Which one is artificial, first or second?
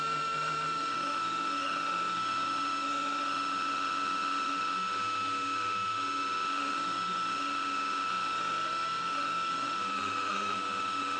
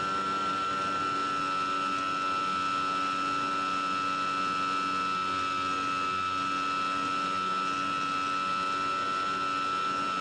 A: first